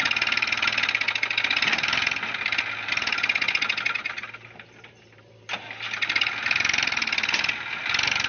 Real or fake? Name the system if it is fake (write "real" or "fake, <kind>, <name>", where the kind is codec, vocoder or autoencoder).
real